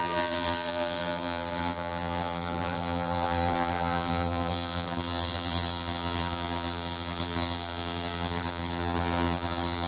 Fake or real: fake